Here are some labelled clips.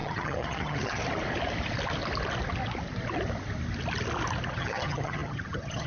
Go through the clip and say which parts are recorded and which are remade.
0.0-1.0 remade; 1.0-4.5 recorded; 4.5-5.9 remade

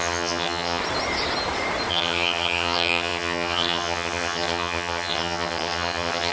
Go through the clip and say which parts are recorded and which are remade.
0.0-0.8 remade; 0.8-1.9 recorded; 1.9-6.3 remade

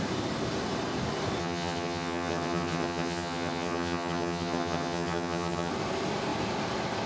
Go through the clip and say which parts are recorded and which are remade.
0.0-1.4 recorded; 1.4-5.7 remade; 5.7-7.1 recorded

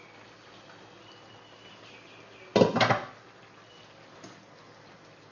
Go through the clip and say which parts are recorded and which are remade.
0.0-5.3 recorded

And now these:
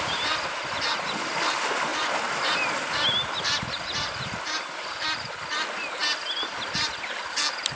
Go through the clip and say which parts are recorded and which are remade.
0.0-7.8 recorded

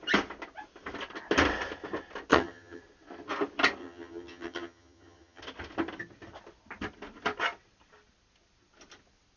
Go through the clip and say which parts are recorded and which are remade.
0.0-2.3 recorded; 2.3-2.8 remade; 2.8-3.8 recorded; 3.8-5.4 remade; 5.4-9.4 recorded